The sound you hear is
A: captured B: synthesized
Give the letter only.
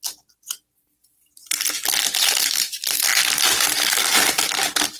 A